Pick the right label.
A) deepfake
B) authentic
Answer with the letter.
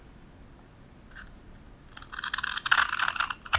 B